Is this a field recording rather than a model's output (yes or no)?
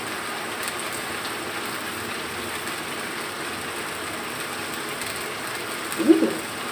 yes